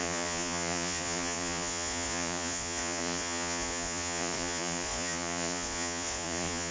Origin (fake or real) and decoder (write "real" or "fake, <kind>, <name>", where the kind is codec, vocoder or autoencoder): fake, vocoder, Vocos